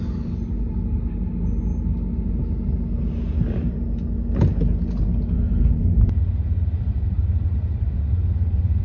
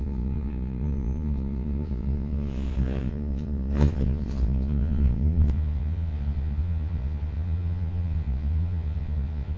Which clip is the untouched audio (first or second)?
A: first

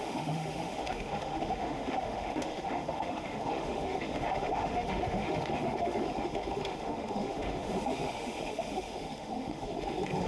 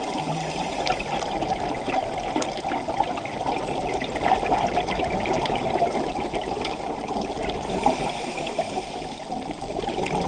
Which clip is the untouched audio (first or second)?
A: second